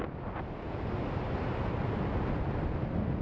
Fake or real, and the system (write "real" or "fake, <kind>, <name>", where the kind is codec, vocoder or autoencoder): real